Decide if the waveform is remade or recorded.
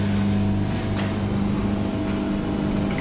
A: recorded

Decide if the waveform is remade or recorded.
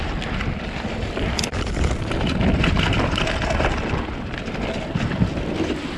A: recorded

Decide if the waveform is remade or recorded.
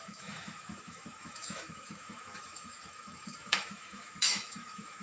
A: remade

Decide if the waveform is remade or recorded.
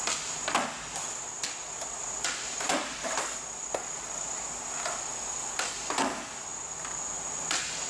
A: recorded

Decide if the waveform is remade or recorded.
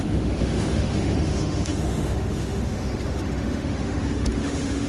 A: remade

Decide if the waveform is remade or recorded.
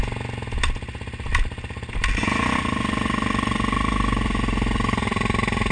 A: recorded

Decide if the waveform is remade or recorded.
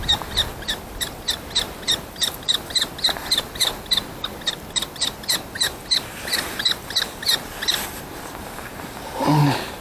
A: recorded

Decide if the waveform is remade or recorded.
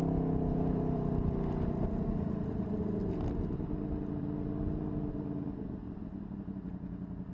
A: recorded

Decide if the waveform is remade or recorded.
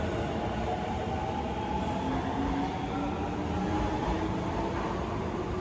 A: recorded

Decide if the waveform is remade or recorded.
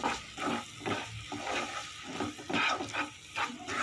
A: recorded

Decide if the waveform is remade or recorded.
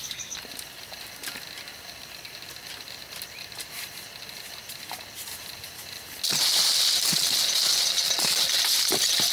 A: recorded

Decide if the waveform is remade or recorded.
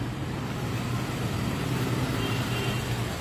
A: recorded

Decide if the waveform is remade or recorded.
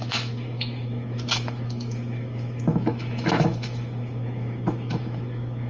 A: remade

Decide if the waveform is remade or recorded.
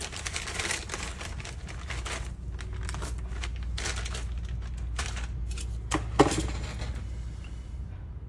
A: recorded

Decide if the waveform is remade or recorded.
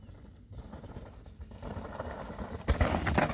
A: recorded